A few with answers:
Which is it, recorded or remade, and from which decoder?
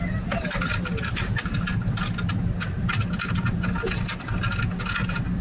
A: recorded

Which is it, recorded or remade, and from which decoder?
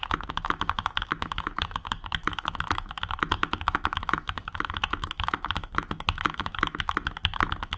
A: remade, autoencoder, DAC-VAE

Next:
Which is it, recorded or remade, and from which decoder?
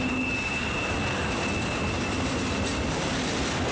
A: recorded